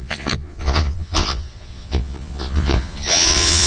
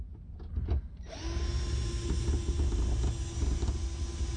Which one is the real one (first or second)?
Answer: second